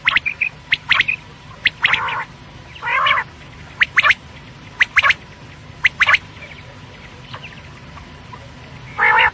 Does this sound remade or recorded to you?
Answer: recorded